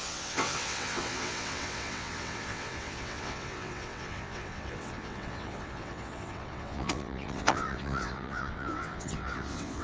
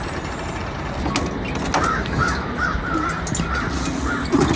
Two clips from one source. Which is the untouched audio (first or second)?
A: second